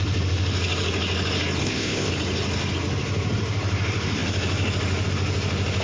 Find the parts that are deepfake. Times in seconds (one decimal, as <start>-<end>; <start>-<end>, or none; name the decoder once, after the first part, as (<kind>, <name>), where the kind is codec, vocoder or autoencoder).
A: 1.6-2.1 (codec, ZipCodec)